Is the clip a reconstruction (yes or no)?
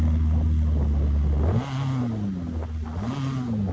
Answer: no